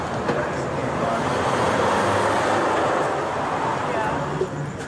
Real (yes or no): yes